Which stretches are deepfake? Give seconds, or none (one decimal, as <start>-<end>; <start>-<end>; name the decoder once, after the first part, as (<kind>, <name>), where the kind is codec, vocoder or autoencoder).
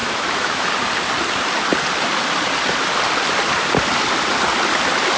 0.0-0.7 (autoencoder, DAC-VAE)